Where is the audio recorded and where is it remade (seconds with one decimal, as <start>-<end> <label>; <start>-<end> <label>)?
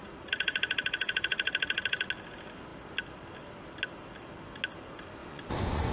0.0-5.2 recorded; 5.2-5.9 remade